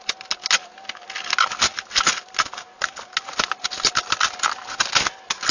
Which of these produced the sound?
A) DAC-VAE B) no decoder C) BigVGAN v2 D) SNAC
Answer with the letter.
B